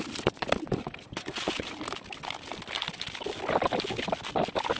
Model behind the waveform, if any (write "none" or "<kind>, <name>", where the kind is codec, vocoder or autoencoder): none